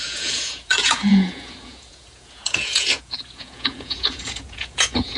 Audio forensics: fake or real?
fake